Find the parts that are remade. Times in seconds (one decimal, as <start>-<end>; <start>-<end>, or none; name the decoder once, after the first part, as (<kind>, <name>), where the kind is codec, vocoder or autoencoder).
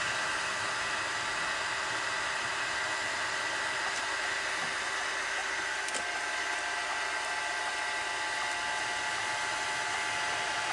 none